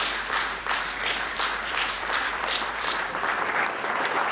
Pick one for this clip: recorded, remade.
remade